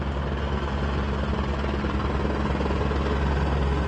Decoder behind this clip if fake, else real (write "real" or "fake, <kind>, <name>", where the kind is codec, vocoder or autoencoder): real